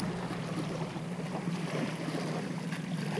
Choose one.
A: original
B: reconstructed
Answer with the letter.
B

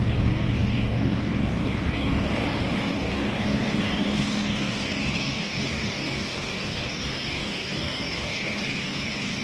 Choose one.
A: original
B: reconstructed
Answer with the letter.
B